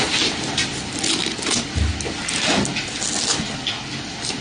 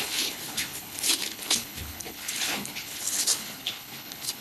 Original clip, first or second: first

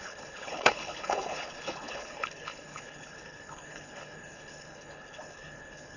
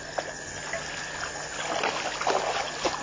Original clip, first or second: second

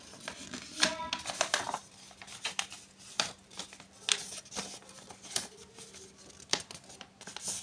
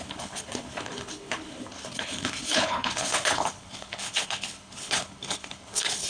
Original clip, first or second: first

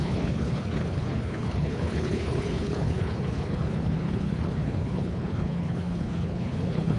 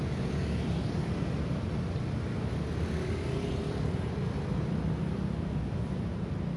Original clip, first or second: second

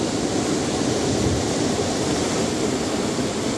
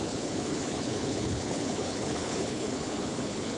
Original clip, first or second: first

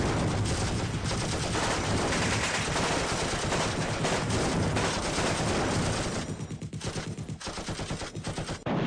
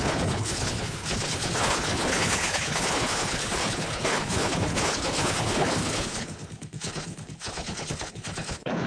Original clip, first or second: first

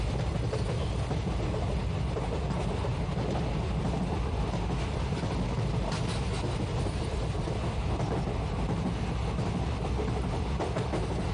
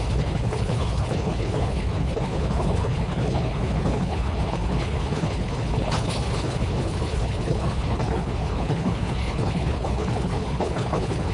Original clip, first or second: first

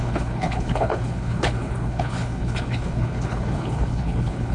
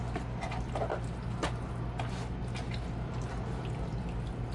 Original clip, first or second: second